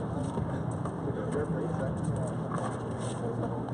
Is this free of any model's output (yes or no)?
yes